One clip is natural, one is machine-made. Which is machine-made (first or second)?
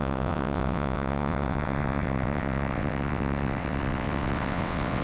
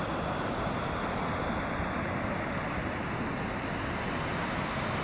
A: first